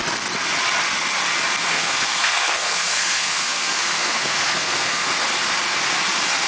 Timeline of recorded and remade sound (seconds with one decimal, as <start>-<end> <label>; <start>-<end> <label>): 0.0-1.7 recorded; 1.7-5.1 remade; 5.1-6.5 recorded